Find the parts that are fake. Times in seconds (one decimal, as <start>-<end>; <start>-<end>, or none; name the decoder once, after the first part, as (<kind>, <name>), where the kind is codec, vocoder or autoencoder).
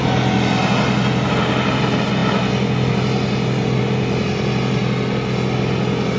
none